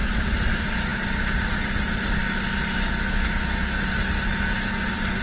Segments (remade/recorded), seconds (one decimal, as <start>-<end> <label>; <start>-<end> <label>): 0.0-5.2 recorded